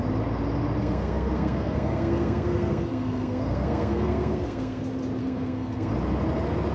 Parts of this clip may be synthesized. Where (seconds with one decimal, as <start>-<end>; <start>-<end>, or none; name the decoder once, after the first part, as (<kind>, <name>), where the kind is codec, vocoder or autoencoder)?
0.8-4.8 (codec, SNAC); 5.2-5.9